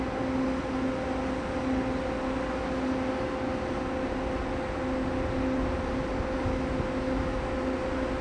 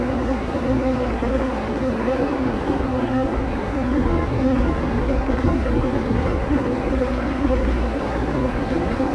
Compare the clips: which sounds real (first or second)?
first